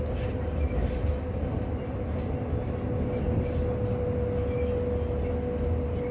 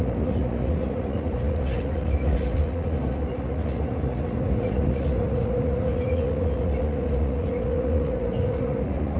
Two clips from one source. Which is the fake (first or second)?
second